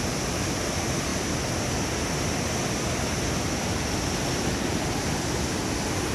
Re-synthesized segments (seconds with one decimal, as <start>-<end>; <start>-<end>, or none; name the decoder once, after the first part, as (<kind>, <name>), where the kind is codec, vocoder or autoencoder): none